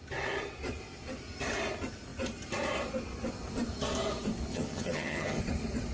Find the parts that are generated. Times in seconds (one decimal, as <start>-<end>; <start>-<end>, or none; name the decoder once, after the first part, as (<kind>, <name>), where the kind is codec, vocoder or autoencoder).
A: 4.5-5.4 (vocoder, HiFi-GAN)